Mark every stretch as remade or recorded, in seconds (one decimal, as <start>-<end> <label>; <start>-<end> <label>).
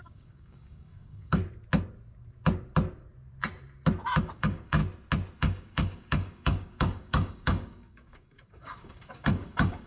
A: 0.0-1.4 remade; 1.4-4.2 recorded; 4.2-4.8 remade; 4.8-5.4 recorded; 5.4-9.9 remade